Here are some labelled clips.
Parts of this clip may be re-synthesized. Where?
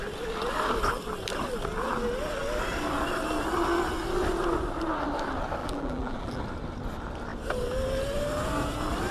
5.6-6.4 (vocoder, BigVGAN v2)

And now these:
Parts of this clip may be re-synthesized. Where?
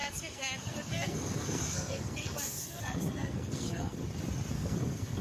0.0-4.0 (codec, SNAC); 4.5-5.2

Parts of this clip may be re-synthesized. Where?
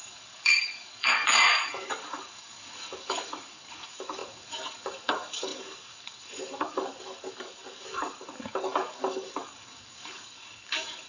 0.0-11.1 (codec, DAC)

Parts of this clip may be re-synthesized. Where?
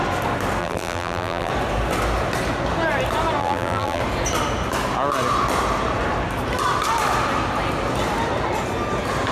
0.6-1.5 (vocoder, BigVGAN v2); 3.4-4.0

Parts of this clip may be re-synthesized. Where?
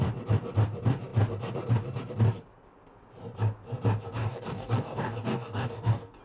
4.2-6.2 (codec, DAC)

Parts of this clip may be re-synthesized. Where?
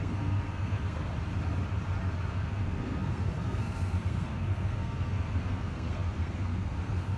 0.0-1.1 (codec, SNAC); 2.3-7.2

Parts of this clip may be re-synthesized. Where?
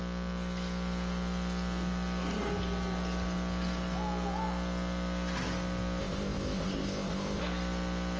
6.0-7.4 (codec, ZipCodec)